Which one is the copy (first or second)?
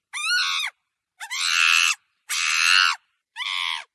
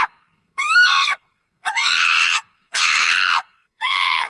second